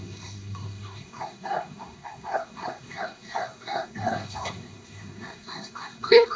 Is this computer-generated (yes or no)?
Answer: yes